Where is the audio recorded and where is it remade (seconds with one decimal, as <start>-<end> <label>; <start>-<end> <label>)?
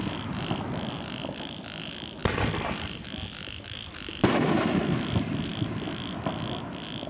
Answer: 0.0-7.1 recorded